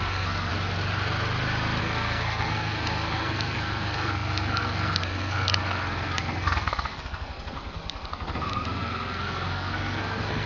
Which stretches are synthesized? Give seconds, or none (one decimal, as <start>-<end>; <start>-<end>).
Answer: 0.0-0.5; 1.8-10.5